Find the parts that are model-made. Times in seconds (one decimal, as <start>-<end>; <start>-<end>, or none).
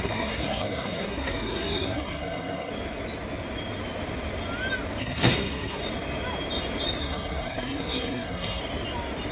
0.0-2.7; 5.0-5.8; 7.0-8.6